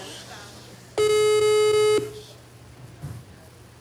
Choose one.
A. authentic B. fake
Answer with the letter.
A